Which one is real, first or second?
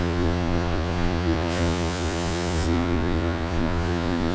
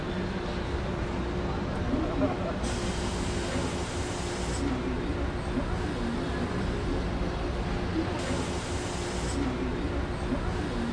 second